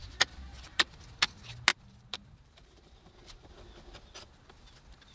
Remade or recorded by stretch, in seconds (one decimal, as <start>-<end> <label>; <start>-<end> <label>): 0.0-0.5 recorded; 0.5-1.0 remade; 1.0-1.7 recorded; 1.7-3.5 remade; 3.5-5.1 recorded